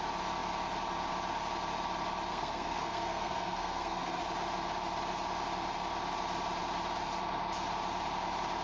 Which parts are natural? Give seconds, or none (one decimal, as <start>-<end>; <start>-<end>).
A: 0.0-2.3; 4.2-8.6